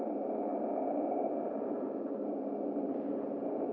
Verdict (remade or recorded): recorded